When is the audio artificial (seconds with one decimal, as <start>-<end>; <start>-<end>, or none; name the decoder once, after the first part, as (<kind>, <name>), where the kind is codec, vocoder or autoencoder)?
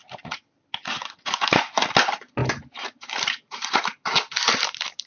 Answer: 2.4-3.8 (vocoder, BigVGAN v2)